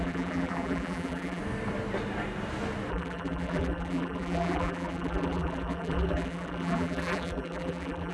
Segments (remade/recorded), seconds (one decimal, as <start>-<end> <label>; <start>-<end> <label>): 0.0-1.4 remade; 1.4-2.9 recorded; 2.9-8.1 remade